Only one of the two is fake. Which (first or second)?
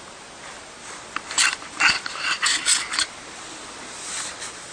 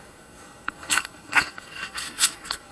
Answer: second